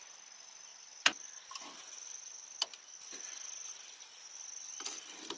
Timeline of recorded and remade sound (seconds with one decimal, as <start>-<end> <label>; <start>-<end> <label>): 0.0-5.4 recorded